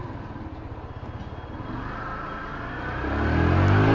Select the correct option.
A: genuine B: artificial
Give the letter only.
A